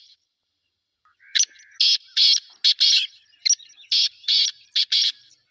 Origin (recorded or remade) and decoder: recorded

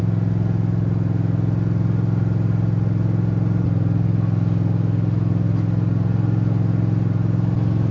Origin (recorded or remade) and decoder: recorded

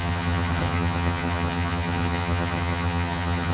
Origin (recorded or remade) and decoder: remade, vocoder, HiFi-GAN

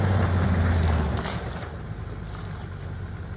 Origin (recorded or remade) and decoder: recorded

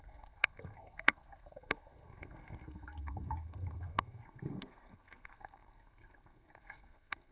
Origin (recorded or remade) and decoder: remade, codec, SNAC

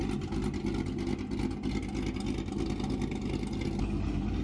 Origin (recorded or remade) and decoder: recorded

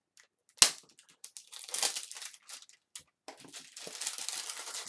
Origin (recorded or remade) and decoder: recorded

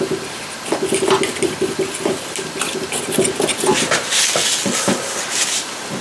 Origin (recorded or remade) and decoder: recorded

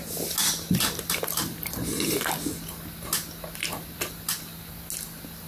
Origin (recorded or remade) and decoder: recorded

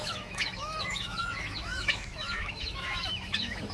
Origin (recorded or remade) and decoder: remade, autoencoder, DAC-VAE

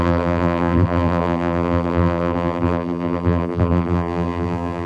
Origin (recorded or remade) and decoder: remade, vocoder, BigVGAN v2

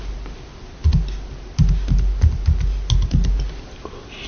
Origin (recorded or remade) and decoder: recorded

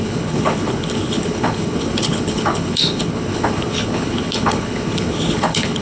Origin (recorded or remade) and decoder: remade, codec, HILCodec